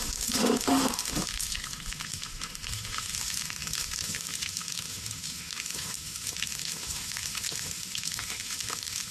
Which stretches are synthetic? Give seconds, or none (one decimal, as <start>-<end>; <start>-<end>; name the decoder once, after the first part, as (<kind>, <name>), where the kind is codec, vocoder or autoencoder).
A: 0.0-9.1 (autoencoder, DAC-VAE)